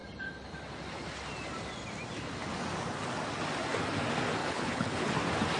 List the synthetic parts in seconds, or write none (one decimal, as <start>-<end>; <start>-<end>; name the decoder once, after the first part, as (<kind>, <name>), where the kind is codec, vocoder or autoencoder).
4.4-5.1 (codec, HILCodec)